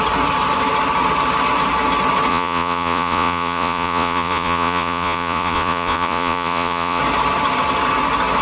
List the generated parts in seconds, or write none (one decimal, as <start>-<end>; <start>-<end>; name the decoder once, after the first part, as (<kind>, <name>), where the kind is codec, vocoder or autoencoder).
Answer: 2.3-7.0 (vocoder, Vocos)